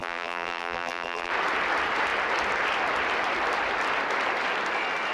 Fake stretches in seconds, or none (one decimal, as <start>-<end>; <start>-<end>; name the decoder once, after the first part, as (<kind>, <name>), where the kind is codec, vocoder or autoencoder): 0.0-1.3 (vocoder, BigVGAN v2)